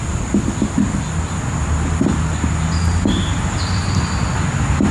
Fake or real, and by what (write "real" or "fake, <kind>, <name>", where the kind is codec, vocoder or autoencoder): real